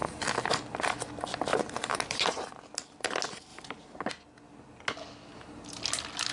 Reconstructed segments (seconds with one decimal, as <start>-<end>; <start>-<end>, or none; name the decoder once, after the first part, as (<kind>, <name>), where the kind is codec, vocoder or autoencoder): 1.5-3.1 (vocoder, BigVGAN v2); 3.5-4.1